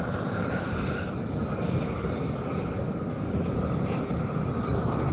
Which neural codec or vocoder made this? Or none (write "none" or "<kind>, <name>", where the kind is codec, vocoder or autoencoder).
none